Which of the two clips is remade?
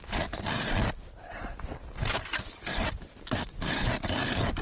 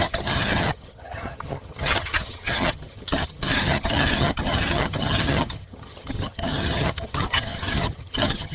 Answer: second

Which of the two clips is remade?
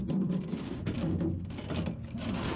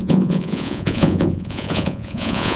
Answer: second